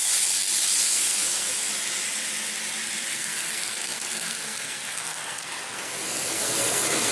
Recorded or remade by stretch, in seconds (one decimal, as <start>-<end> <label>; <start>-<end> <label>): 0.0-0.8 recorded; 0.8-1.7 remade; 1.7-3.1 recorded; 3.1-7.1 remade